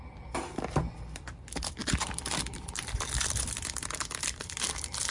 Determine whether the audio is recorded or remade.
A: remade